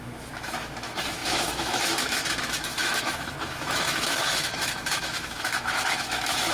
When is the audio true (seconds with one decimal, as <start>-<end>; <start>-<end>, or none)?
none